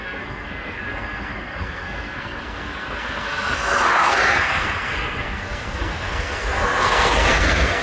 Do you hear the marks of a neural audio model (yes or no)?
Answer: yes